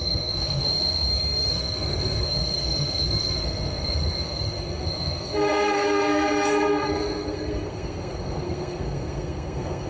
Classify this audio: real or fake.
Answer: fake